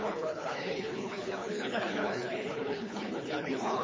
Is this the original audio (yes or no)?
no